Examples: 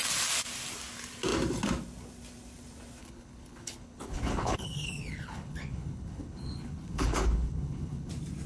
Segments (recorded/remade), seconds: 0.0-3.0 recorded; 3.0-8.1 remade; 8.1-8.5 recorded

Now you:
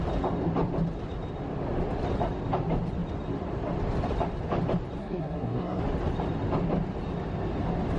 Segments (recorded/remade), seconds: 0.0-5.0 recorded; 5.0-5.8 remade; 5.8-8.0 recorded